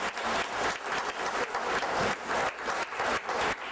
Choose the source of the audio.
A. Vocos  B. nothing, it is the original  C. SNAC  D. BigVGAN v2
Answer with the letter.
B